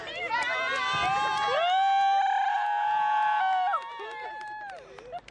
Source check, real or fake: real